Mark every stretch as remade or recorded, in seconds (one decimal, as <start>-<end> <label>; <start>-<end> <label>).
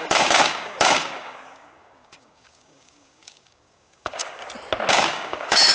0.0-4.4 remade; 4.4-4.9 recorded; 4.9-5.7 remade